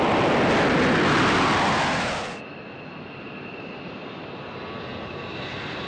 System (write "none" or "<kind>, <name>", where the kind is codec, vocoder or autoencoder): none